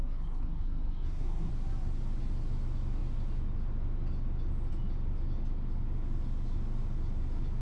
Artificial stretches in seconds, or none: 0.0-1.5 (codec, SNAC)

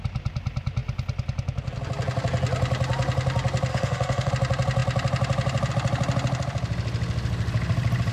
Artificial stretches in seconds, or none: 3.7-4.3 (autoencoder, DAC-VAE)

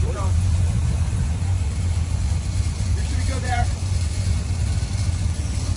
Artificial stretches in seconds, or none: 0.0-4.6 (vocoder, Vocos); 5.1-5.8

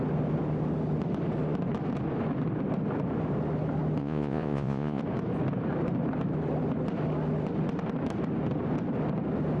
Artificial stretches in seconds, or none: 4.0-5.0 (vocoder, Vocos)

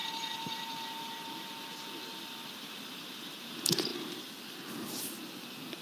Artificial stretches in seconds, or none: 0.0-3.5 (vocoder, BigVGAN v2); 3.9-4.7

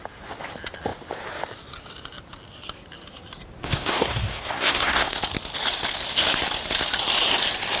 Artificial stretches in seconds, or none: 3.6-5.2 (codec, SNAC)